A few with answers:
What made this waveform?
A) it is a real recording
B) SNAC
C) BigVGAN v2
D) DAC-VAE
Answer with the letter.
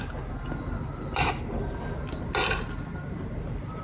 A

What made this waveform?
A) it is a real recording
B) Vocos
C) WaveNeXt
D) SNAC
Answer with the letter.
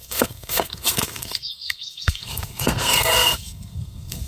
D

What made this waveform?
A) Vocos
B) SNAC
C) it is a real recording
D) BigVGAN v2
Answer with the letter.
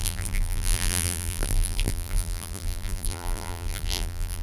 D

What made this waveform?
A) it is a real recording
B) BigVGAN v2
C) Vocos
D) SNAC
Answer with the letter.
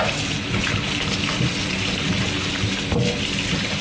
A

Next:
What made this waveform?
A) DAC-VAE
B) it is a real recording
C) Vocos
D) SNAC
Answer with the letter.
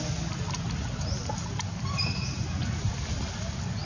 B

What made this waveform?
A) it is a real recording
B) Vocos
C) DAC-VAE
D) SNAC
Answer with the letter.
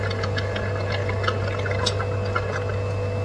A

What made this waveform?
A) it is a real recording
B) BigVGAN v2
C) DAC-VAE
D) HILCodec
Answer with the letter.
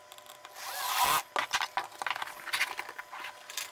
A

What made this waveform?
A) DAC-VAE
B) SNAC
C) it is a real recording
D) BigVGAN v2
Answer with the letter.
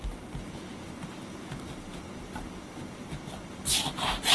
C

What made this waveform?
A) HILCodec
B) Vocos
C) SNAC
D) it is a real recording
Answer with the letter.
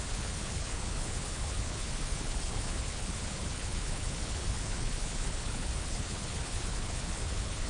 A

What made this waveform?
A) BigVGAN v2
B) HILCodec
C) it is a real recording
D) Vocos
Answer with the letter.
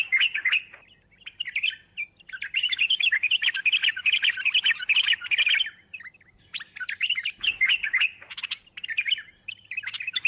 C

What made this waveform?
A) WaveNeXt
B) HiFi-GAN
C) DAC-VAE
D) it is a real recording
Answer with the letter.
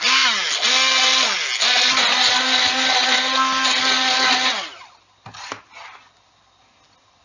D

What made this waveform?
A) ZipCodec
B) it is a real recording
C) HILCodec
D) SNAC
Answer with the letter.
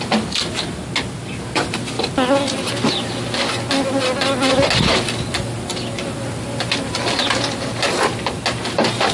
B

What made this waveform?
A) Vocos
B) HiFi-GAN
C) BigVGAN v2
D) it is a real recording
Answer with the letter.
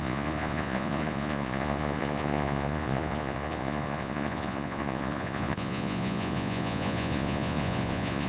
A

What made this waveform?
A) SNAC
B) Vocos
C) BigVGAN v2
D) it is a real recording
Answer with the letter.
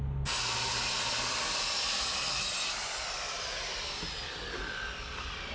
D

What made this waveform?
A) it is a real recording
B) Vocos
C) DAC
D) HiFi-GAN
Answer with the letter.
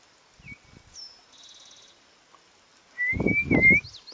A